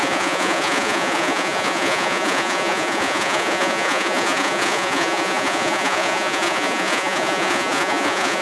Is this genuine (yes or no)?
no